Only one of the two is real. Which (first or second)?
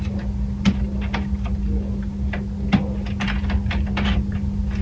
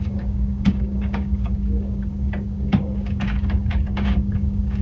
first